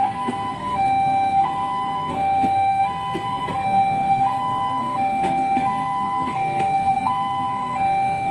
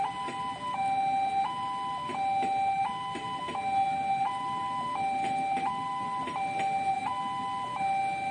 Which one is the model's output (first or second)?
first